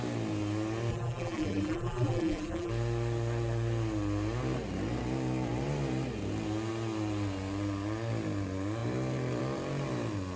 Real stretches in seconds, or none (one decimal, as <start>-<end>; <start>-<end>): 0.0-0.9; 2.7-10.4